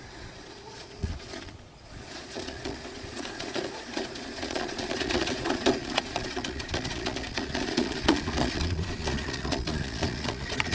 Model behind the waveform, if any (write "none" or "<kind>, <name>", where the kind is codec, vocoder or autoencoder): vocoder, Vocos